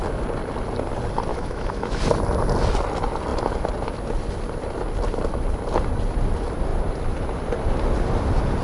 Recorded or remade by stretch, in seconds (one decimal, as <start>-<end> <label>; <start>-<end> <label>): 0.0-1.3 recorded; 1.3-2.0 remade; 2.0-8.6 recorded